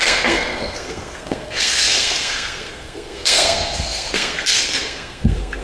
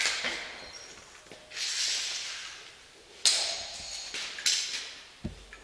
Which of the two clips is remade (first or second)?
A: first